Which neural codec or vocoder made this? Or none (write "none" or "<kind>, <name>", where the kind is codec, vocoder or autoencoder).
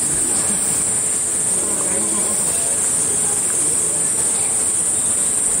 none